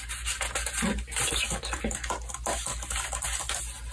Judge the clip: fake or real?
real